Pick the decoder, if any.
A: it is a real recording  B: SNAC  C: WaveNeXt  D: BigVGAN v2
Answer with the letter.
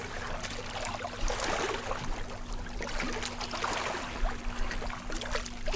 A